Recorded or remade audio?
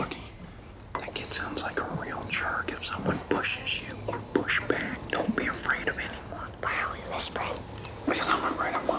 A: recorded